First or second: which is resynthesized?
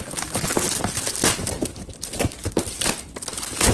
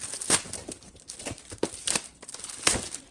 first